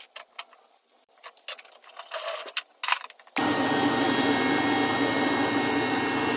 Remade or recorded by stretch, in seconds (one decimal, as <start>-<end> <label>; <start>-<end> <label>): 0.0-6.4 recorded